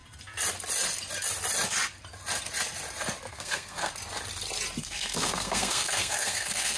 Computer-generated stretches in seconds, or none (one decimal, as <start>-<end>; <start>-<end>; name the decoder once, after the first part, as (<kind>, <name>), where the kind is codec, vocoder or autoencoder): 3.3-3.9 (codec, SNAC); 4.8-6.8